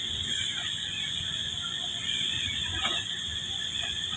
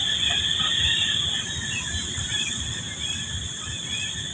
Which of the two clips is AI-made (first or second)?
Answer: first